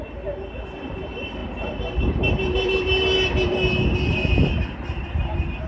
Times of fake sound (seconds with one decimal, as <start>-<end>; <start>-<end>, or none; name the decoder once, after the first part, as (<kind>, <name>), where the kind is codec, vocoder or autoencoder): none